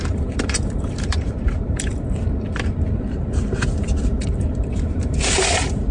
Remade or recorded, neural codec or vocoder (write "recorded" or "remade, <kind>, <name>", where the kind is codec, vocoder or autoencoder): remade, vocoder, BigVGAN v2